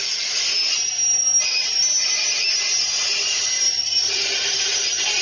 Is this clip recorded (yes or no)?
yes